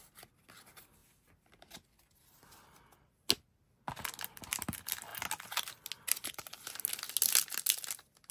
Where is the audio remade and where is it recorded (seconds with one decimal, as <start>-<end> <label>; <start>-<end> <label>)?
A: 0.0-8.3 recorded